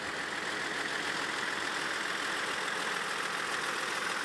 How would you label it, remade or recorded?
recorded